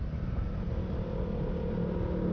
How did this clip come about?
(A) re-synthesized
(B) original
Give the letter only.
B